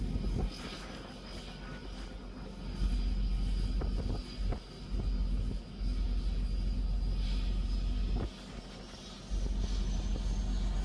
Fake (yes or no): no